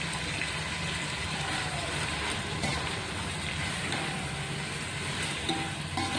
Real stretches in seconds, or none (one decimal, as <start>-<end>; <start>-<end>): 0.0-6.2